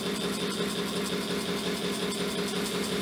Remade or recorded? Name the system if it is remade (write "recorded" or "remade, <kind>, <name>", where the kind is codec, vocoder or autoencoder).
recorded